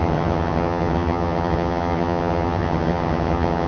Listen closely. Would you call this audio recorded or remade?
remade